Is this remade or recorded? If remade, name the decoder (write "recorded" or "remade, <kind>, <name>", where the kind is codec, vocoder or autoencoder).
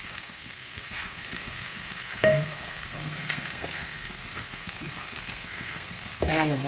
remade, codec, SNAC